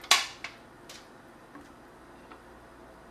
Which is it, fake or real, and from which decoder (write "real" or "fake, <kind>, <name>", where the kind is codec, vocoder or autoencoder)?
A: real